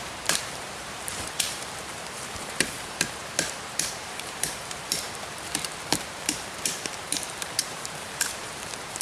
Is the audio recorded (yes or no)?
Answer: no